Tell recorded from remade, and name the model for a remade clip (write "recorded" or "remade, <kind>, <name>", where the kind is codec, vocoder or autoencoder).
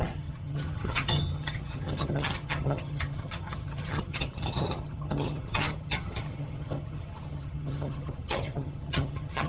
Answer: remade, vocoder, HiFi-GAN